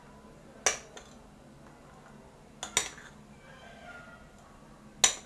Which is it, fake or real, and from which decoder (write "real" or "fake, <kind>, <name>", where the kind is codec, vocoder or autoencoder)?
real